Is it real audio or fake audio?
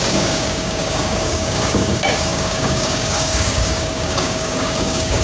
fake